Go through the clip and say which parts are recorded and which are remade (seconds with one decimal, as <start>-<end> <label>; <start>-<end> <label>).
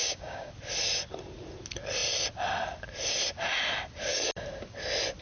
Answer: 0.0-0.5 remade; 0.5-5.2 recorded